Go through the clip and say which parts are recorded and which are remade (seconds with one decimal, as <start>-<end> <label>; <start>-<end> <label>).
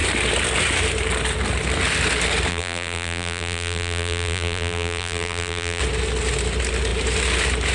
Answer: 0.0-2.5 recorded; 2.5-5.8 remade; 5.8-7.7 recorded